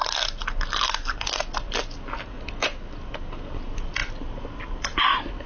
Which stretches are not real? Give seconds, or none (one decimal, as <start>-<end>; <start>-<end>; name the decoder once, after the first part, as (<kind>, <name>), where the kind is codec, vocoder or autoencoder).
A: none